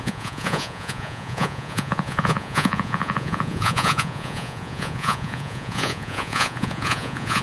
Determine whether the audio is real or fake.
fake